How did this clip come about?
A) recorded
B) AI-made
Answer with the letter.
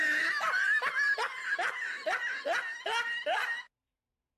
A